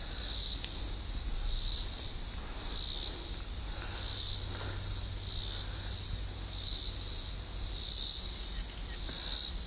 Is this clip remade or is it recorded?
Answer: recorded